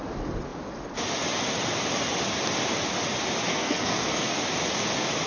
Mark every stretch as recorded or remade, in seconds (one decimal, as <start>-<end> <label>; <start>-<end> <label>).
0.0-3.5 recorded; 3.5-4.3 remade; 4.3-5.3 recorded